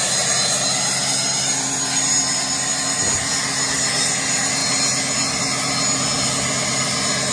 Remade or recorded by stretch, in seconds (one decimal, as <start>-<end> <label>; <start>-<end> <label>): 0.0-7.3 recorded

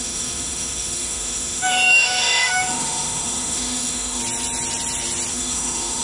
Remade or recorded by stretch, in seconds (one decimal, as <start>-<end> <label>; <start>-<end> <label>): 0.0-4.2 remade; 4.2-5.3 recorded; 5.3-6.0 remade

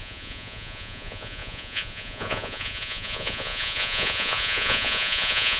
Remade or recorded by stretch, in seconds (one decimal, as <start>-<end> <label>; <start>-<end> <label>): 0.0-5.6 remade

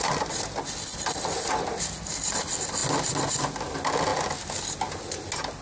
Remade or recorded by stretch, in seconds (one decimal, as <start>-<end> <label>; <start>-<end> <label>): 0.0-5.6 recorded

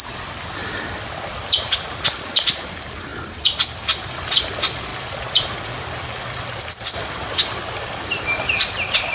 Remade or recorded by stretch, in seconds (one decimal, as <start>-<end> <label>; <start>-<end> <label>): 0.0-0.6 recorded; 0.6-2.1 remade; 2.1-3.1 recorded; 3.1-4.1 remade; 4.1-9.1 recorded

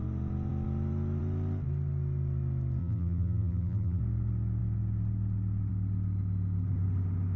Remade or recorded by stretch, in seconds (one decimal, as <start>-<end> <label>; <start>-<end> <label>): 0.0-2.8 recorded; 2.8-4.0 remade; 4.0-7.4 recorded

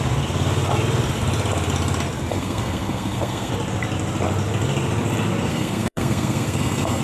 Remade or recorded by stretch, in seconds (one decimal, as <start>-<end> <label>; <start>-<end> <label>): 0.0-2.3 recorded; 2.3-3.5 remade; 3.5-5.5 recorded; 5.5-7.0 remade